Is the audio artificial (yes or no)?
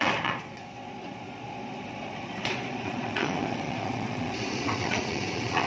yes